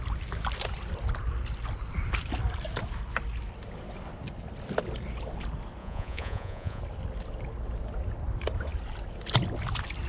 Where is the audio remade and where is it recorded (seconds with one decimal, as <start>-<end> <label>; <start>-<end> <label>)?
0.0-5.8 recorded; 5.8-6.8 remade; 6.8-10.1 recorded